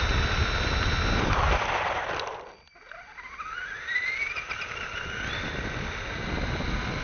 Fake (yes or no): no